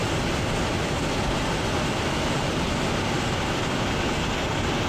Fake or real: real